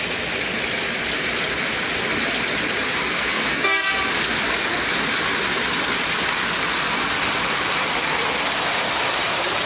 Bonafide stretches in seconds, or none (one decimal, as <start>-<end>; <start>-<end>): 0.0-3.0; 3.9-9.7